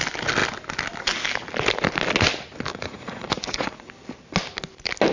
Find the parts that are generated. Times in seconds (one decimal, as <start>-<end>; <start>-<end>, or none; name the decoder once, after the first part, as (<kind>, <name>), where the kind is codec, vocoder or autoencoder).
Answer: 2.7-3.9 (vocoder, Vocos)